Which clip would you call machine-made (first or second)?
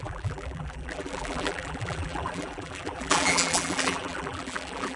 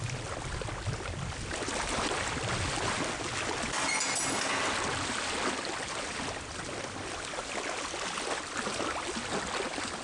first